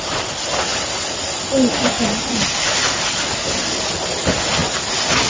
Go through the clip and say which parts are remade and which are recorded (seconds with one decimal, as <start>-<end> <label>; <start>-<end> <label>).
0.0-5.3 recorded